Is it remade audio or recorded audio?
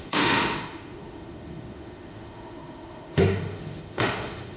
remade